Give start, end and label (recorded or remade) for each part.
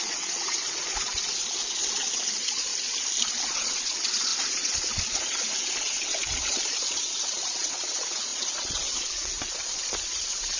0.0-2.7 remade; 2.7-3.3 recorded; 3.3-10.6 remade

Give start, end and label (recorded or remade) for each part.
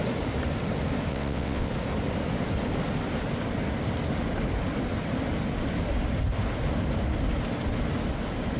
0.0-1.1 recorded; 1.1-1.7 remade; 1.7-8.6 recorded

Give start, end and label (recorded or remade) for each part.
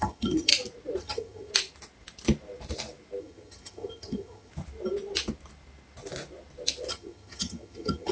0.0-0.5 remade; 0.5-1.0 recorded; 1.0-1.5 remade; 1.5-3.2 recorded; 3.2-4.5 remade; 4.5-6.9 recorded; 6.9-8.1 remade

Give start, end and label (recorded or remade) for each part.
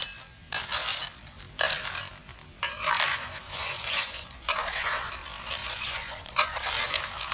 0.0-3.1 recorded; 3.1-5.1 remade; 5.1-5.6 recorded; 5.6-6.7 remade; 6.7-7.3 recorded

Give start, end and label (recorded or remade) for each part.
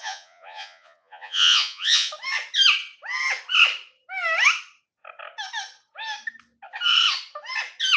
0.0-2.1 remade; 2.1-8.0 recorded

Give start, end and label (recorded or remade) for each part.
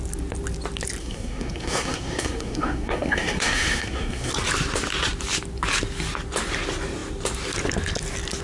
0.0-1.0 recorded; 1.0-4.3 remade; 4.3-8.4 recorded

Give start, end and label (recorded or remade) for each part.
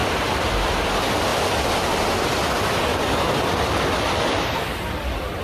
0.0-0.7 remade; 0.7-1.3 recorded; 1.3-2.1 remade; 2.1-2.9 recorded; 2.9-3.9 remade; 3.9-5.4 recorded